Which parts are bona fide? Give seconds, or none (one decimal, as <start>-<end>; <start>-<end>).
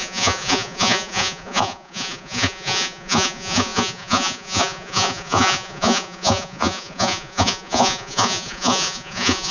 none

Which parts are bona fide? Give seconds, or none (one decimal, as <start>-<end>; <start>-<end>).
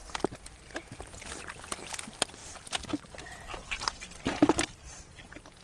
1.4-5.6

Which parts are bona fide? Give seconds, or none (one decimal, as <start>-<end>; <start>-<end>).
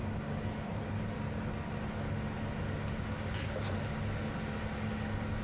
0.0-5.4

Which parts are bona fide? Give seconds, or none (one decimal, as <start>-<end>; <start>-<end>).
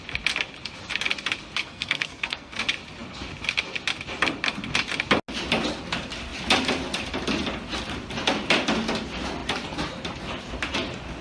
0.0-1.6; 2.6-11.2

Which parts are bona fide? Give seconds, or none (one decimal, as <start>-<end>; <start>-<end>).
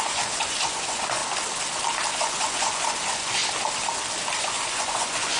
1.2-2.2; 3.4-4.4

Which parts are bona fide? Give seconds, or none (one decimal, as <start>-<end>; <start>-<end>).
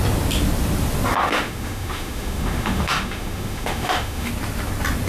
0.0-1.2; 4.3-5.1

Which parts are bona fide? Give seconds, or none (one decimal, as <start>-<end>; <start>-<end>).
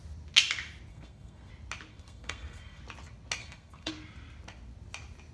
0.0-0.9; 1.5-1.9; 2.8-3.4; 3.9-5.3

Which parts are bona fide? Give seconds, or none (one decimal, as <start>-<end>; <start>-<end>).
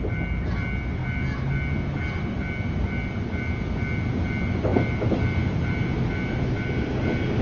0.0-7.4